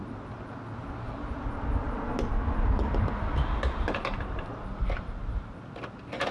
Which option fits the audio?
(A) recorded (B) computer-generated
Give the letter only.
A